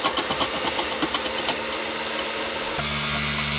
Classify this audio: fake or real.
real